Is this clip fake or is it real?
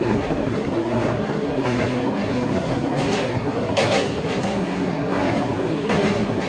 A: fake